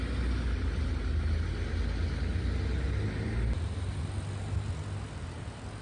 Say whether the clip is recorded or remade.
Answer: recorded